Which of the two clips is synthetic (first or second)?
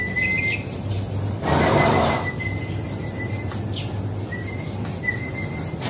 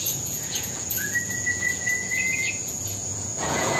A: second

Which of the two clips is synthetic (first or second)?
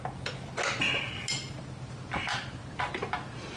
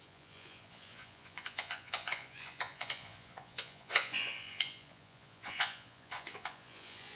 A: second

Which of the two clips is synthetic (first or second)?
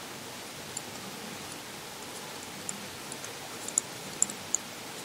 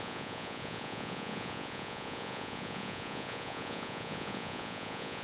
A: second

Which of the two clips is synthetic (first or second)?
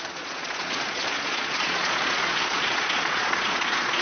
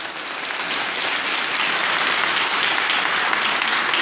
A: first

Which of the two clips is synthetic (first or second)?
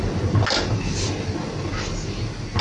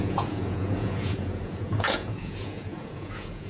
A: second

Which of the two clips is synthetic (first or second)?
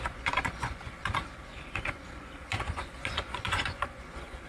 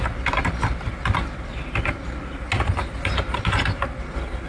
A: first